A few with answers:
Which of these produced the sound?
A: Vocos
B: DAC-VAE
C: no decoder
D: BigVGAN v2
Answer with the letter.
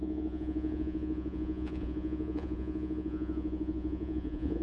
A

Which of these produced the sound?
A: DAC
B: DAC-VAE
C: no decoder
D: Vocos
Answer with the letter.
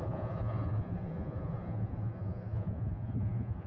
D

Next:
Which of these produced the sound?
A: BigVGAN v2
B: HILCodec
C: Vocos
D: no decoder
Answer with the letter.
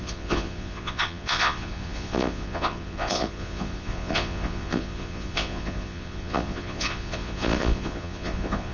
C